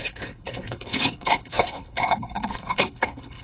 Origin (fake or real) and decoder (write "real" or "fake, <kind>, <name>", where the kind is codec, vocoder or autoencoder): fake, codec, HILCodec